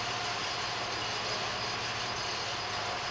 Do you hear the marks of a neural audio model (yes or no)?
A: no